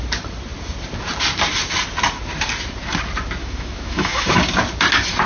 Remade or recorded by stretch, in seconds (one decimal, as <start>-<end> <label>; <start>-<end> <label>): 0.0-3.4 recorded; 3.4-4.4 remade; 4.4-5.3 recorded